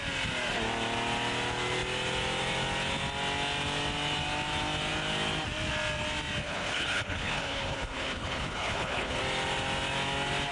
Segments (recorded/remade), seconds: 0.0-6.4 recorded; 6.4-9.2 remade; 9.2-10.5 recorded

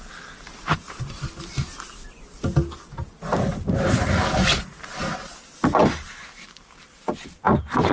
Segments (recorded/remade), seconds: 0.0-7.9 recorded

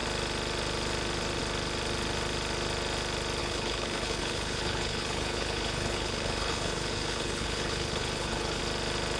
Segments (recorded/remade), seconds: 0.0-3.4 recorded; 3.4-8.6 remade; 8.6-9.2 recorded

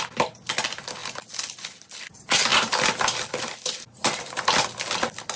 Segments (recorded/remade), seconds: 0.0-5.4 recorded

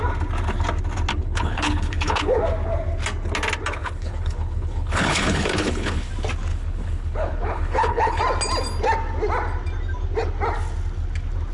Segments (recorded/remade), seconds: 0.0-1.1 recorded; 1.1-2.4 remade; 2.4-3.8 recorded; 3.8-6.1 remade; 6.1-6.5 recorded; 6.5-8.2 remade; 8.2-11.5 recorded

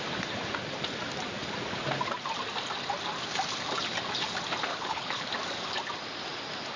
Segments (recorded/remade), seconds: 0.0-4.7 recorded; 4.7-5.3 remade; 5.3-6.8 recorded

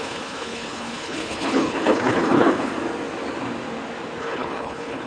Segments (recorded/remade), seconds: 0.0-2.7 remade; 2.7-4.2 recorded; 4.2-5.1 remade